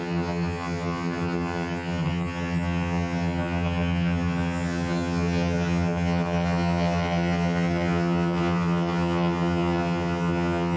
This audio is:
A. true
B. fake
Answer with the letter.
B